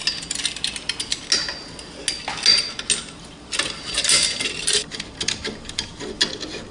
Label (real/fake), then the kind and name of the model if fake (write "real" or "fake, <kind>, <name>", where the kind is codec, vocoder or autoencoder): real